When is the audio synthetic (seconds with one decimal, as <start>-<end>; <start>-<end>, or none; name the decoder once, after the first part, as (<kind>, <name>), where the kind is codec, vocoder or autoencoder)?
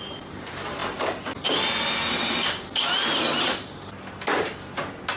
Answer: none